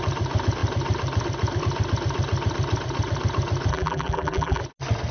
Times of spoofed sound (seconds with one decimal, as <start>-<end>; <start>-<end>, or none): 3.7-4.6